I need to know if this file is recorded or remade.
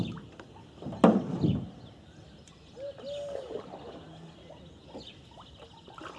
recorded